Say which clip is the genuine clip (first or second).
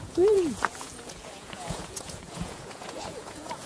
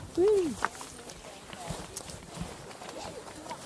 second